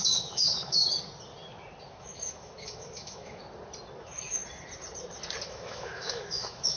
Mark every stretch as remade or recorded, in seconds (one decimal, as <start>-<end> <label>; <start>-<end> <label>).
0.0-0.8 remade; 0.8-1.9 recorded; 1.9-3.4 remade; 3.4-4.0 recorded; 4.0-4.4 remade; 4.4-5.5 recorded; 5.5-6.8 remade